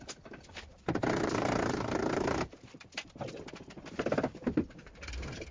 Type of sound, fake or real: real